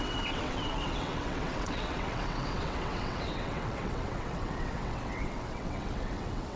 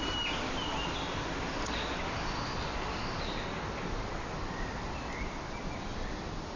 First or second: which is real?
second